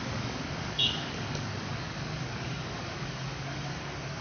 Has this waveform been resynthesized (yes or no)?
yes